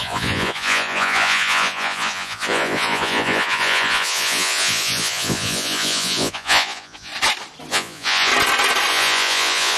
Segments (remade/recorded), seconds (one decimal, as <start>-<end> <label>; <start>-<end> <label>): 0.0-7.1 remade; 7.1-7.7 recorded; 7.7-8.3 remade; 8.3-8.9 recorded; 8.9-9.8 remade